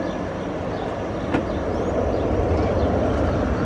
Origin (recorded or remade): recorded